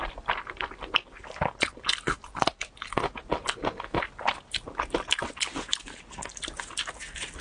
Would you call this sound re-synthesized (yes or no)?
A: no